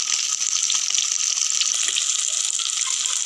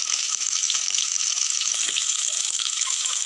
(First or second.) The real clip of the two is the first